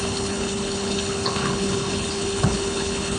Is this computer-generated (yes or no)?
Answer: yes